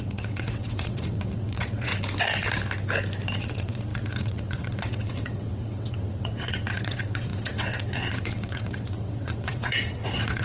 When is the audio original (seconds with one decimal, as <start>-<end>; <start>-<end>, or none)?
1.9-3.4